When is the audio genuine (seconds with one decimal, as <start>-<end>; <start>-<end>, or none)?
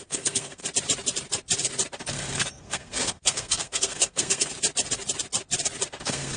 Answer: 0.6-2.1; 4.5-6.0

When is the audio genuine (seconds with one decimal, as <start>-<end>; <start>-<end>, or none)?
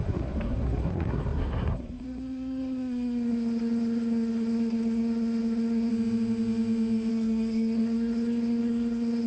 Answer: 5.9-7.1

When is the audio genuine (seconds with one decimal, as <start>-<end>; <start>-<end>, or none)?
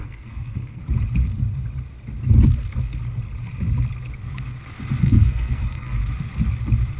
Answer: 0.8-5.0; 6.0-7.0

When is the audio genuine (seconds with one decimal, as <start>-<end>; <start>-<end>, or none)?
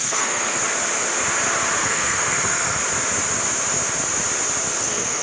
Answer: 0.6-1.8; 2.8-4.8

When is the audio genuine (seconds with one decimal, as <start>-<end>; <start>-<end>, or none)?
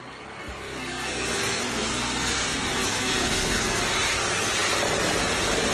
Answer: 0.0-0.4; 3.8-5.7